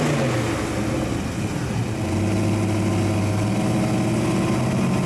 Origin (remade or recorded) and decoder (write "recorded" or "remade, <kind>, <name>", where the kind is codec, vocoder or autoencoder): recorded